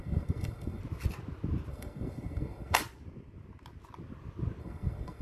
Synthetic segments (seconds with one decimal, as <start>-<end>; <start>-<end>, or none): 0.0-0.8; 1.7-2.8; 4.6-5.2